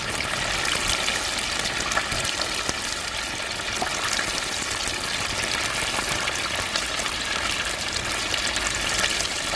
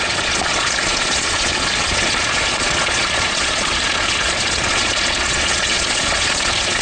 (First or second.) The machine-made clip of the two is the second